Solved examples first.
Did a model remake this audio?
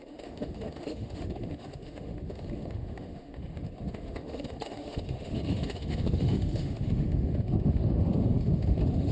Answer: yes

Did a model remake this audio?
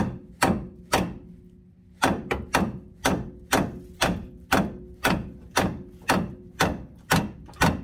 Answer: no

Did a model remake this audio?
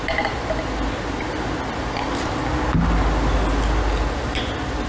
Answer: no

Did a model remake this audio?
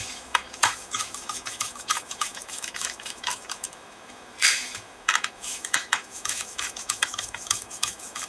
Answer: yes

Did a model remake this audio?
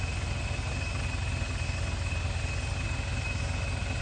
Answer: no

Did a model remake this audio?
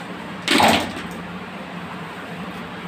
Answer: no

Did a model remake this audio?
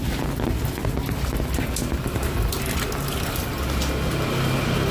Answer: no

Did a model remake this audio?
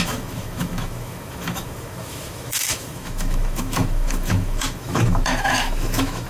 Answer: yes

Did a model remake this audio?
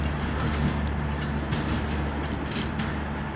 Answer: no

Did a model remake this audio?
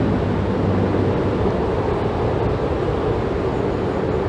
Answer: no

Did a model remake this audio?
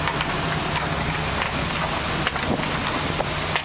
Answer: no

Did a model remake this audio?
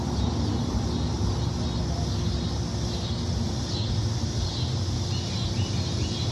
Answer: no